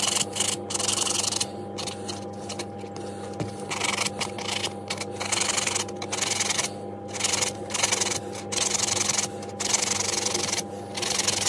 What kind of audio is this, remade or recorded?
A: recorded